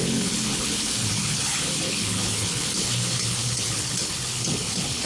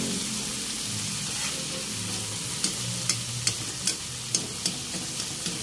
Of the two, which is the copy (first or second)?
first